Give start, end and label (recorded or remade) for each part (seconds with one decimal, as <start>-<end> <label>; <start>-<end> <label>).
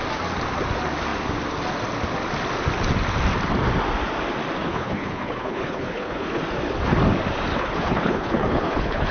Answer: 0.0-4.6 recorded; 4.6-6.4 remade; 6.4-7.5 recorded; 7.5-9.1 remade